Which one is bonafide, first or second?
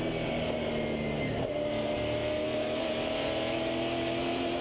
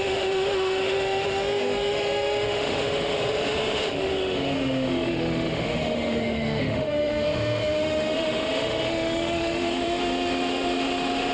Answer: first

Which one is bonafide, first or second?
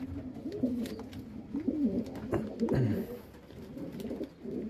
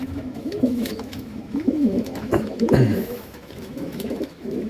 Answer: first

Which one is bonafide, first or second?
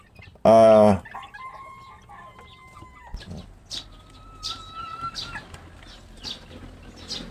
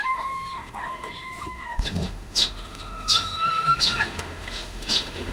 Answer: first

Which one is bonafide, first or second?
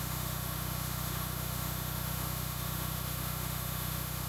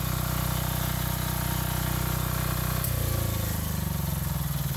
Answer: second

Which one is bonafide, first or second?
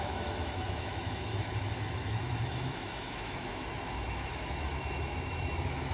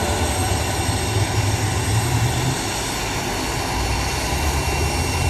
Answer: second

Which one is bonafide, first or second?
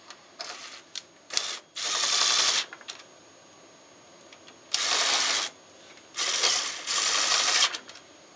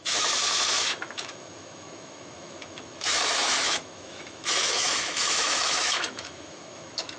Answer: first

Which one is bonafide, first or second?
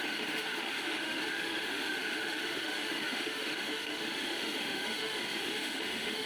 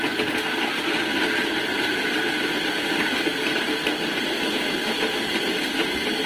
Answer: second